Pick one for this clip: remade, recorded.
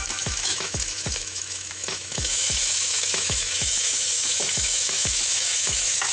remade